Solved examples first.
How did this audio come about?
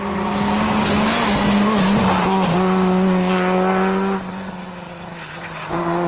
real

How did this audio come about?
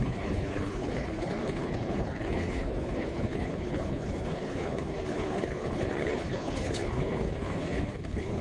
fake